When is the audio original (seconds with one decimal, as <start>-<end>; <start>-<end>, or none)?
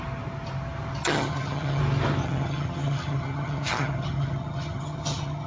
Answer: 0.0-1.0; 1.8-2.2